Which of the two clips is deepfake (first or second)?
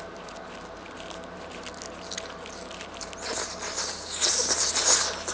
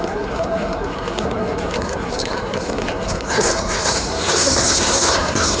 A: second